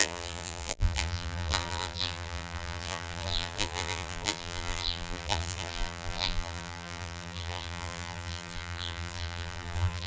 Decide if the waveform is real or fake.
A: fake